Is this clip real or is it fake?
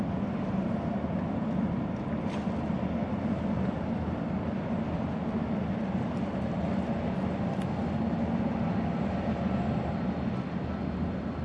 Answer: real